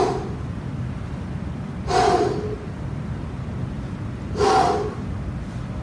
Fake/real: real